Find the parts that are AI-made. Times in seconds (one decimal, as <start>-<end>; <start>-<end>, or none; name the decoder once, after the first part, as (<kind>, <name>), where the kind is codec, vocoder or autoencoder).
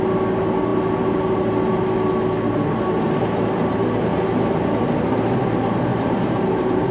5.9-6.9 (vocoder, BigVGAN v2)